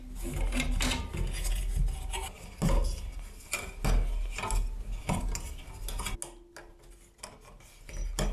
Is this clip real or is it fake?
real